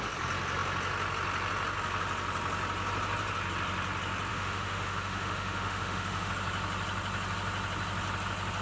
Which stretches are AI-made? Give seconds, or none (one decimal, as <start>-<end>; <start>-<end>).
4.3-6.3